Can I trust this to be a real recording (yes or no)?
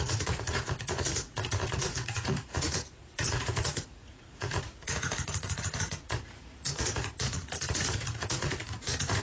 no